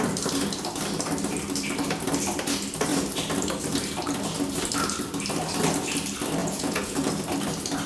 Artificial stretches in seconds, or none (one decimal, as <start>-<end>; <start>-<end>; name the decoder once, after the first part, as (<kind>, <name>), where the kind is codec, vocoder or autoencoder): 6.4-7.1 (vocoder, Vocos)